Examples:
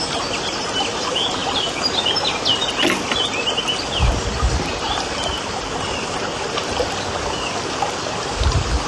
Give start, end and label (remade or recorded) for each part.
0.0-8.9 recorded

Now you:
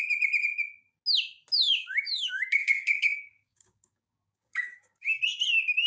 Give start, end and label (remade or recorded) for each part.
0.0-1.7 recorded; 1.7-5.2 remade; 5.2-5.9 recorded

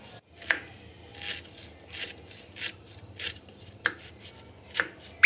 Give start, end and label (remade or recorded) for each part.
0.0-1.1 recorded; 1.1-4.3 remade; 4.3-5.3 recorded

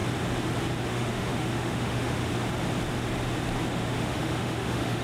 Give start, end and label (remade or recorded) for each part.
0.0-0.9 recorded; 0.9-2.3 remade; 2.3-3.7 recorded; 3.7-5.0 remade

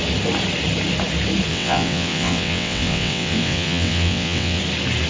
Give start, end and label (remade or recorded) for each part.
0.0-1.5 recorded; 1.5-4.6 remade; 4.6-5.1 recorded

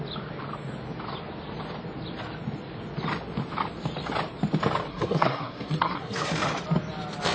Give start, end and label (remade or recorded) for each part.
0.0-4.9 recorded; 4.9-6.3 remade; 6.3-7.3 recorded

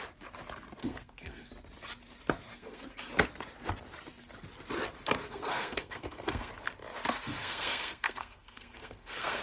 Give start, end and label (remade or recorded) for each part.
0.0-0.8 recorded; 0.8-1.5 remade; 1.5-2.5 recorded; 2.5-3.1 remade; 3.1-5.2 recorded; 5.2-6.5 remade; 6.5-7.4 recorded; 7.4-9.4 remade

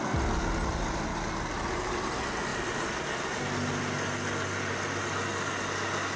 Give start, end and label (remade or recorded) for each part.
0.0-1.1 remade; 1.1-1.9 recorded; 1.9-6.2 remade